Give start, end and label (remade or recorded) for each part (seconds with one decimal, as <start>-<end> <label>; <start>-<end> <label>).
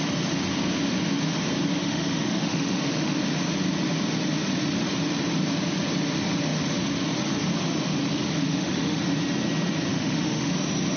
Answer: 0.0-1.8 recorded; 1.8-3.2 remade; 3.2-8.4 recorded; 8.4-9.0 remade; 9.0-9.9 recorded; 9.9-10.5 remade; 10.5-11.0 recorded